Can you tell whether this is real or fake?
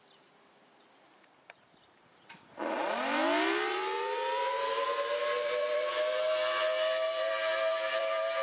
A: fake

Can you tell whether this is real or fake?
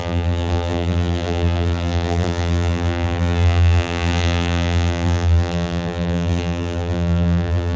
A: fake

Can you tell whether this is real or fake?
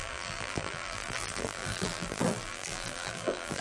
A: fake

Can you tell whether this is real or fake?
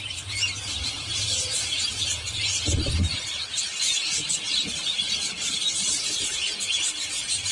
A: fake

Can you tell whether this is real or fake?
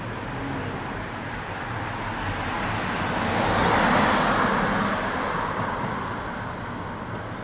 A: real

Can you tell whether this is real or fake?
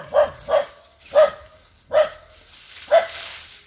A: real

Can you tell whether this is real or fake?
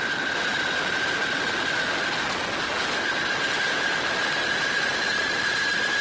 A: fake